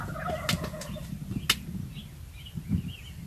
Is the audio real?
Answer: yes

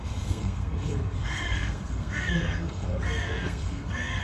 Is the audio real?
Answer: no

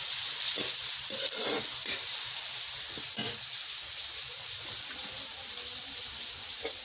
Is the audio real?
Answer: yes